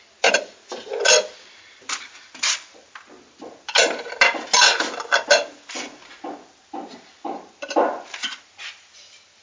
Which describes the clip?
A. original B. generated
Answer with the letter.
A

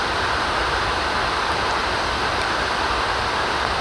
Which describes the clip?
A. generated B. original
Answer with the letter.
B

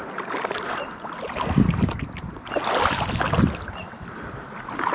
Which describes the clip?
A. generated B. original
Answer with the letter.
B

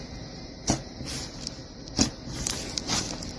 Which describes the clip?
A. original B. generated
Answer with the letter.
A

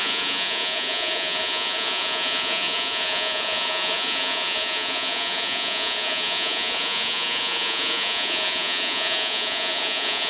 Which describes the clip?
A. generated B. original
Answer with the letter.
A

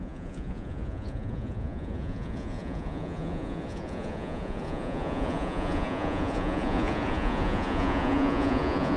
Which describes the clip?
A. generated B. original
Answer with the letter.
A